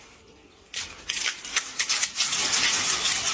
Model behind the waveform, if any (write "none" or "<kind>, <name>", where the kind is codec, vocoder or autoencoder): none